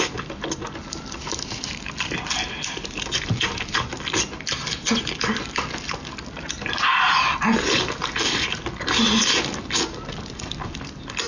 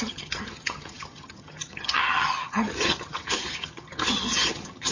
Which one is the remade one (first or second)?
second